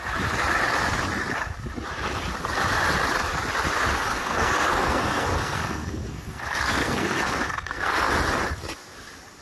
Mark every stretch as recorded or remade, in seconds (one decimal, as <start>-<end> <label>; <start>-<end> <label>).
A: 0.0-4.1 recorded; 4.1-8.1 remade; 8.1-9.4 recorded